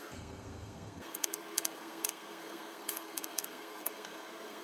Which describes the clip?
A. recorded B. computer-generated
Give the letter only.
B